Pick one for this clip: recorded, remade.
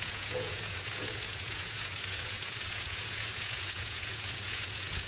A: remade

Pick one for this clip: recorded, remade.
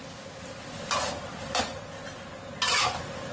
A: recorded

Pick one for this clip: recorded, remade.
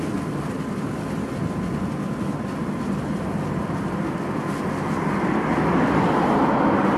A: recorded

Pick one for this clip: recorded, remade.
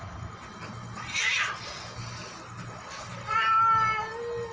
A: recorded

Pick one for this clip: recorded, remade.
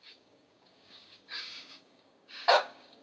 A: remade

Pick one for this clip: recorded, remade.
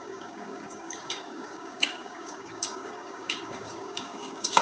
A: remade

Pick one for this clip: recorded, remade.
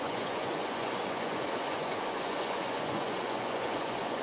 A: remade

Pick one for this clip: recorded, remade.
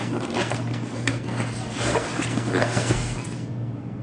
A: remade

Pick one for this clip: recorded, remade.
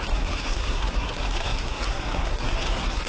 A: remade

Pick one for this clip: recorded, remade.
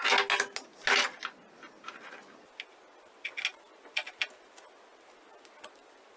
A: recorded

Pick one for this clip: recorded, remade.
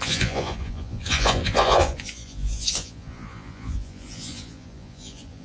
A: remade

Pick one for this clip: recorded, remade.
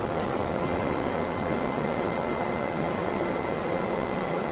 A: remade